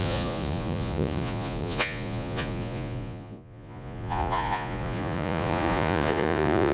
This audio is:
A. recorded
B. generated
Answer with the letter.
B